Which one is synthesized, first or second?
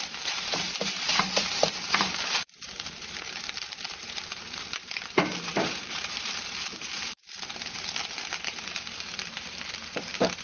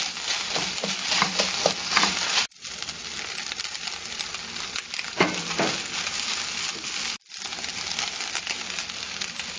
first